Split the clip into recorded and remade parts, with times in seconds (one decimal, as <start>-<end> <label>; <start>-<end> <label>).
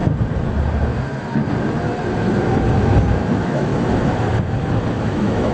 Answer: 0.0-3.3 recorded; 3.3-3.7 remade; 3.7-5.0 recorded; 5.0-5.5 remade